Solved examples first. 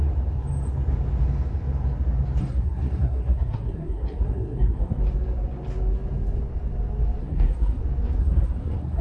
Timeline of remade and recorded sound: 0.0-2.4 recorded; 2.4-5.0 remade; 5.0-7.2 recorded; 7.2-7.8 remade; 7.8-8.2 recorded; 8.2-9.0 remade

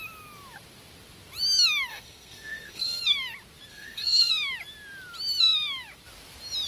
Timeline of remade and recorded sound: 0.0-1.9 recorded; 1.9-3.0 remade; 3.0-3.7 recorded; 3.7-4.3 remade; 4.3-6.7 recorded

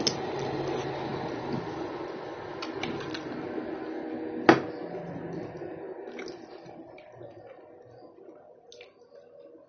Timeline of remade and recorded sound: 0.0-9.7 recorded

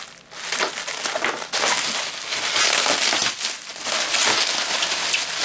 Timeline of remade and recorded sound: 0.0-5.4 recorded

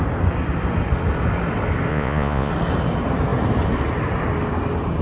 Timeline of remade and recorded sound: 0.0-1.9 recorded; 1.9-2.5 remade; 2.5-5.0 recorded

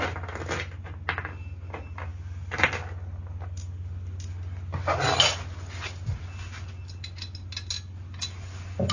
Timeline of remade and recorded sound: 0.0-8.9 recorded